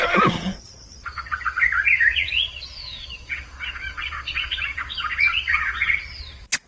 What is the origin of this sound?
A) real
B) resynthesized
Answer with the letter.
B